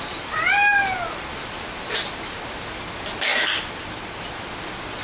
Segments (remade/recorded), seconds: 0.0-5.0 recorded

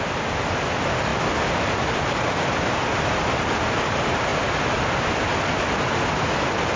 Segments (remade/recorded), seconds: 0.0-6.8 recorded

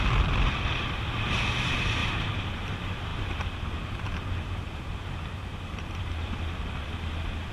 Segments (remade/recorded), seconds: 0.0-2.0 recorded; 2.0-2.7 remade; 2.7-3.1 recorded; 3.1-6.7 remade; 6.7-7.5 recorded